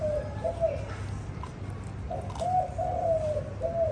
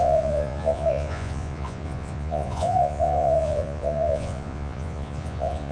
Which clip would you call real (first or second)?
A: first